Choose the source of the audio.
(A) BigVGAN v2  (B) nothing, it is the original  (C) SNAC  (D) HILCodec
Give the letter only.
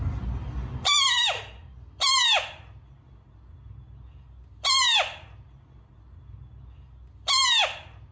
B